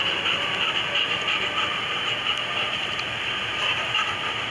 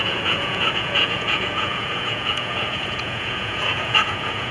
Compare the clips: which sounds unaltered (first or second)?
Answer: first